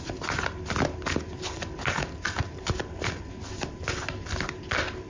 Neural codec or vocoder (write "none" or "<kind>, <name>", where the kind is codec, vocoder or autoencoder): none